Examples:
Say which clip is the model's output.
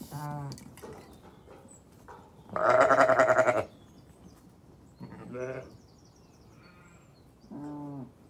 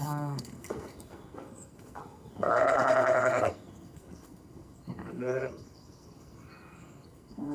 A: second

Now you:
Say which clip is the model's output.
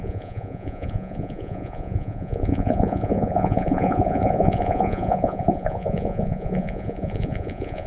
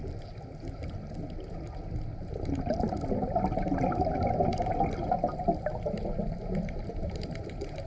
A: first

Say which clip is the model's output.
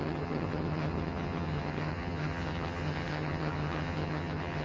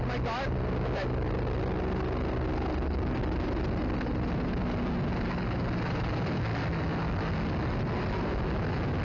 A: first